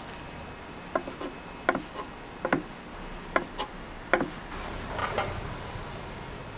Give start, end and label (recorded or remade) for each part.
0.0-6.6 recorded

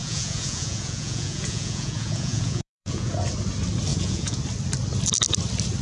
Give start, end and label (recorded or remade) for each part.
0.0-3.1 remade; 3.1-3.9 recorded; 3.9-4.4 remade; 4.4-5.8 recorded

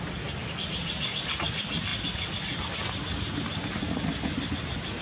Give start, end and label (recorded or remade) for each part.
0.0-5.0 recorded